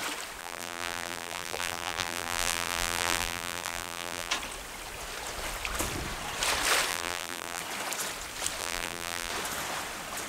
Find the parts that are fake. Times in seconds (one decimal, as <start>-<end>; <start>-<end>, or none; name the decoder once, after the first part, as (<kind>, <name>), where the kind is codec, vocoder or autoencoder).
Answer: 0.4-4.3 (vocoder, BigVGAN v2); 6.9-7.6; 8.6-9.3